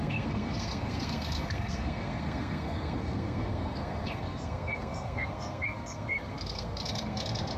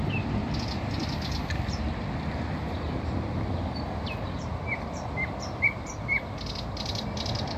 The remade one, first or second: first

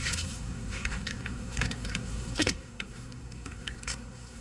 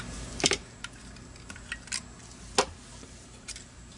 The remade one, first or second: first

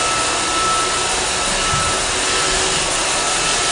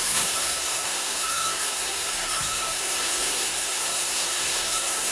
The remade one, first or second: second